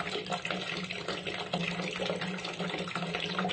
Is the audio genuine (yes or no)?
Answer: yes